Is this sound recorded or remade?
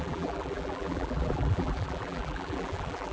remade